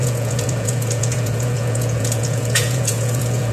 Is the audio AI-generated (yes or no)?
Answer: yes